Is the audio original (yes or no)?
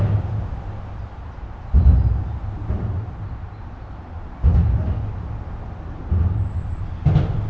yes